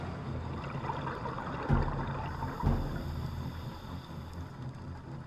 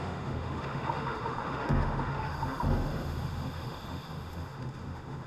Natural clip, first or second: first